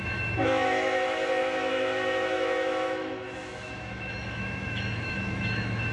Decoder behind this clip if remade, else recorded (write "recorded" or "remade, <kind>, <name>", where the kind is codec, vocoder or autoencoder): remade, autoencoder, DAC-VAE